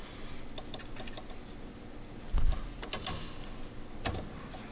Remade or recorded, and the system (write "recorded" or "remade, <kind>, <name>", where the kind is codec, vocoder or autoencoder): recorded